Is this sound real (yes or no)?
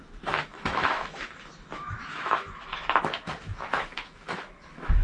no